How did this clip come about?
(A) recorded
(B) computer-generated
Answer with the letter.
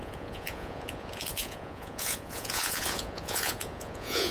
B